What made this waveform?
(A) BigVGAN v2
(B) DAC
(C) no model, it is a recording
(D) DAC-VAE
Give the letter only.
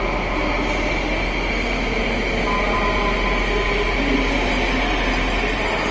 C